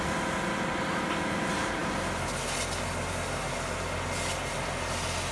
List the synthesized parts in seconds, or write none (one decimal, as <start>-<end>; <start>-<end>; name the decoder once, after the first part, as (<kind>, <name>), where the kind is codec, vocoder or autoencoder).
none